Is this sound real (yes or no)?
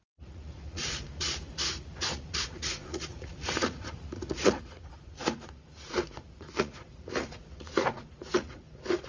no